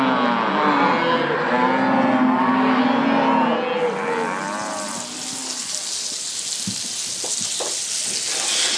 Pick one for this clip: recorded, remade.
recorded